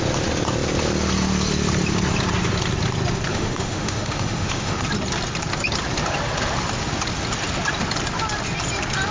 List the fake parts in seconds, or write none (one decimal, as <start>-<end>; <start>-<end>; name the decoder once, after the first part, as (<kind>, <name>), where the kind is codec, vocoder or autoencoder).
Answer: 3.3-4.8 (autoencoder, DAC-VAE)